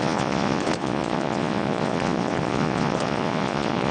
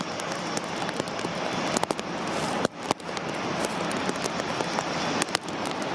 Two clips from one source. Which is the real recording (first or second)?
second